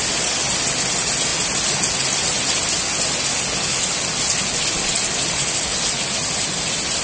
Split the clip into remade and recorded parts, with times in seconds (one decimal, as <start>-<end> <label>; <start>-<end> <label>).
0.0-7.0 recorded

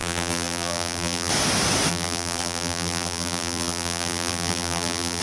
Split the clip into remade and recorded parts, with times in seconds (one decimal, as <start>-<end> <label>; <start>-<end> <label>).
0.0-1.3 remade; 1.3-1.9 recorded; 1.9-5.2 remade

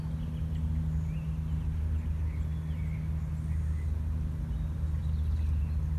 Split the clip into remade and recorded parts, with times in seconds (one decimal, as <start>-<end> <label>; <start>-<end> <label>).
0.0-6.0 recorded

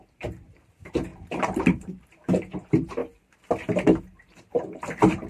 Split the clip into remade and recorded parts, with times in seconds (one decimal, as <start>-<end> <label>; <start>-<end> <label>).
0.0-3.0 remade; 3.0-4.0 recorded; 4.0-5.3 remade

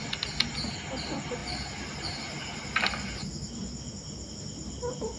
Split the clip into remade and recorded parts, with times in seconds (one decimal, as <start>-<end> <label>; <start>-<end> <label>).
0.0-5.2 recorded

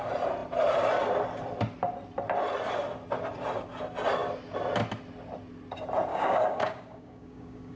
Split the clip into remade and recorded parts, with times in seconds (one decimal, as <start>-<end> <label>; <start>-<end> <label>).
0.0-6.1 recorded; 6.1-7.8 remade

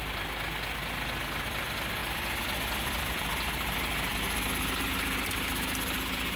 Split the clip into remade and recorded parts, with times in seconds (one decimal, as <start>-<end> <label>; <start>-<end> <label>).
0.0-2.0 recorded; 2.0-3.5 remade; 3.5-6.4 recorded